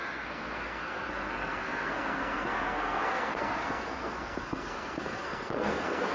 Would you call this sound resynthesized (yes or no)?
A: yes